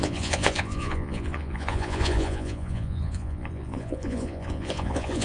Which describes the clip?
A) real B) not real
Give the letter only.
B